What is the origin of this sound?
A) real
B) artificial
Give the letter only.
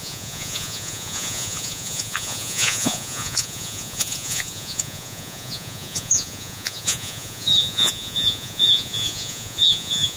B